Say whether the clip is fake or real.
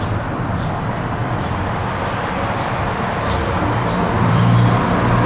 fake